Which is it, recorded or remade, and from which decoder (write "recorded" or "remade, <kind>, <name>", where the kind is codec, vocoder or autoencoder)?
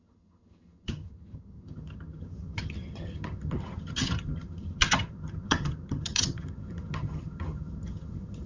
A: remade, vocoder, HiFi-GAN